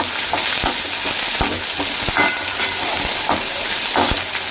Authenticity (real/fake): real